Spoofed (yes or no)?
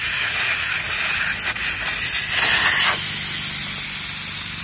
no